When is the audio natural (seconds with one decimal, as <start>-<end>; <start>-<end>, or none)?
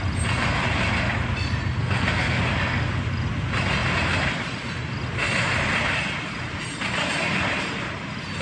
0.0-1.8; 2.4-8.4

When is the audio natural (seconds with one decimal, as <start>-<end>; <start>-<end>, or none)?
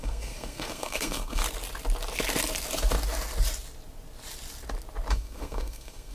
1.4-5.1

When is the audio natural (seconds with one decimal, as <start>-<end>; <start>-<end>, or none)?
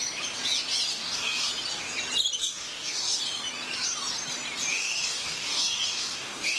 0.0-0.9; 1.5-2.4; 3.2-4.7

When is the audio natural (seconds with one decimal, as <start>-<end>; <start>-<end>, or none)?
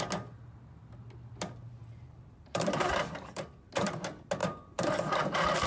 0.0-1.8; 3.9-4.4; 4.9-5.7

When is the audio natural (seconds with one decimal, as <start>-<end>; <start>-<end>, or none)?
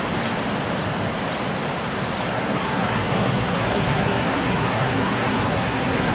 0.0-2.3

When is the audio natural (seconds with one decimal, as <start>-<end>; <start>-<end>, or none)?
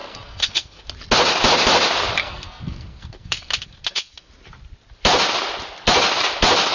0.8-2.2; 4.3-6.7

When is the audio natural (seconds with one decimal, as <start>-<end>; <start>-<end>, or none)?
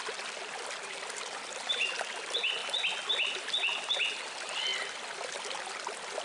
0.0-6.2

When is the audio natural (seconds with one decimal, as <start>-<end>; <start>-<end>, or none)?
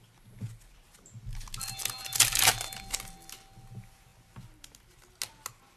0.0-2.1; 3.0-5.8